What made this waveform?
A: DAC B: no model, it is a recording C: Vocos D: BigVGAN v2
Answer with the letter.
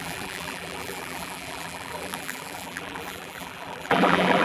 D